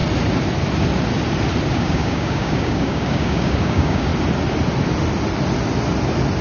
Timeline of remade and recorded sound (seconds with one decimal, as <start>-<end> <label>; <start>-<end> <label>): 0.0-1.7 recorded; 1.7-4.1 remade; 4.1-6.4 recorded